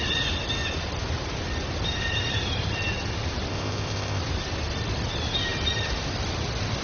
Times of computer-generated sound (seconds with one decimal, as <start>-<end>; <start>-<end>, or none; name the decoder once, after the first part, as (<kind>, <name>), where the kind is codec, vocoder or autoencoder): 3.5-4.2 (codec, ZipCodec)